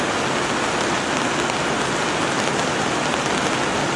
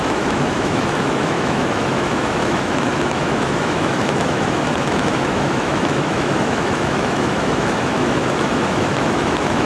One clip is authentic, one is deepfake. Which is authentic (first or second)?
first